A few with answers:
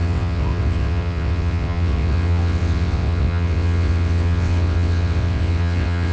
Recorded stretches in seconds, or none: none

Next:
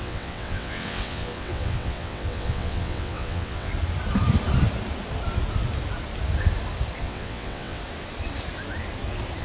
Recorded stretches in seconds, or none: 3.7-7.0; 7.8-9.4

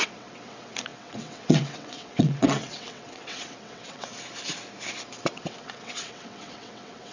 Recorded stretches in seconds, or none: 4.1-5.3

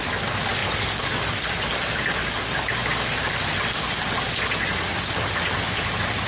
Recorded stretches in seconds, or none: 0.0-6.3

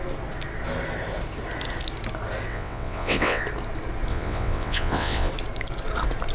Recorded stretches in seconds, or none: 0.0-2.5; 3.4-4.1; 5.3-6.3

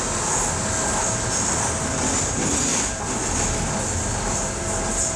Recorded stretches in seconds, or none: 0.0-5.2

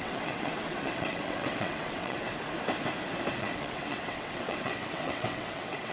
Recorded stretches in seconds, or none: 2.3-3.3